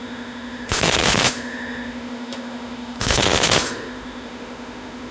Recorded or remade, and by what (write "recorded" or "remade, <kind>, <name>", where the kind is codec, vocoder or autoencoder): remade, autoencoder, DAC-VAE